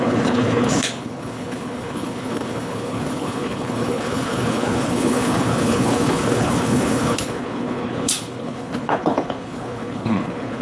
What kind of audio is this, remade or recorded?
remade